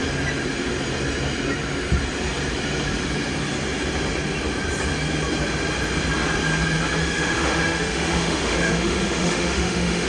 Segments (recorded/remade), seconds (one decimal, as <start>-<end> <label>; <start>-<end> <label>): 0.0-7.0 recorded; 7.0-10.1 remade